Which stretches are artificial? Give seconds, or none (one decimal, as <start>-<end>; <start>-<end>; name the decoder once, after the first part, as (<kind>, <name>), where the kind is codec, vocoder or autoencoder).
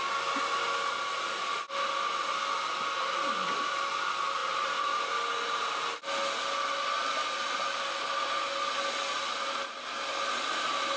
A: none